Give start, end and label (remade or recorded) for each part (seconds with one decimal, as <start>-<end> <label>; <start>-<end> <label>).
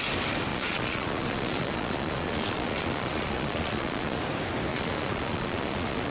0.0-0.5 recorded; 0.5-4.2 remade; 4.2-4.7 recorded; 4.7-6.1 remade